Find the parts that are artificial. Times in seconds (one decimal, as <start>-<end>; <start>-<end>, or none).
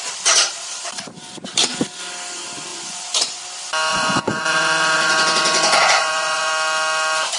2.7-3.4; 3.9-6.5